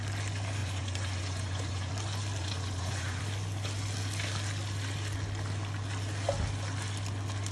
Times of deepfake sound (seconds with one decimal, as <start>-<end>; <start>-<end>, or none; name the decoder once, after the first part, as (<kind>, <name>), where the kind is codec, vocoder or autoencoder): 0.6-1.9 (vocoder, Vocos); 2.4-3.2